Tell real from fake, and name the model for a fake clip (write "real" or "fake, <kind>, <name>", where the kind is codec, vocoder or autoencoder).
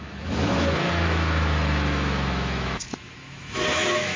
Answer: fake, autoencoder, DAC-VAE